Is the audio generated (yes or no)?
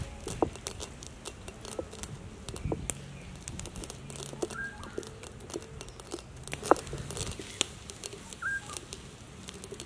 no